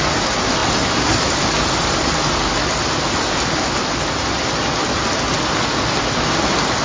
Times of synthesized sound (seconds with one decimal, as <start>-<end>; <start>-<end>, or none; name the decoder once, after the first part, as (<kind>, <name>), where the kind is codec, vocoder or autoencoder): none